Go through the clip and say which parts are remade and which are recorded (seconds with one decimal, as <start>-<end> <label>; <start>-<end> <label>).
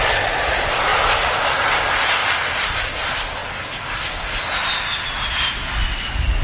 0.0-0.9 recorded; 0.9-1.7 remade; 1.7-2.2 recorded; 2.2-2.9 remade; 2.9-6.4 recorded